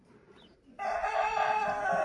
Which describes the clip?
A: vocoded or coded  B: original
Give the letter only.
B